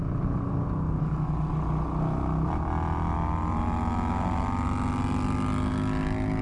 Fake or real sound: real